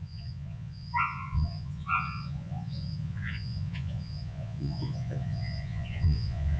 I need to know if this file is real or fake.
fake